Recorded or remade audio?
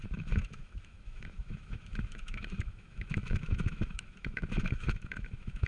remade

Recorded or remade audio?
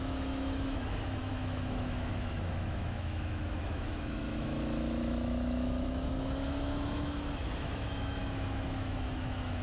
remade